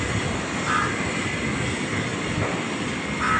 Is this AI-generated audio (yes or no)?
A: no